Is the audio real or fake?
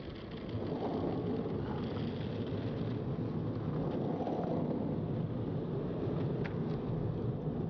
real